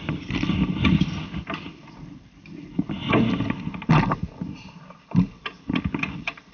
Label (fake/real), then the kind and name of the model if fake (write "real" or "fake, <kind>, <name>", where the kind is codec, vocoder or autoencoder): real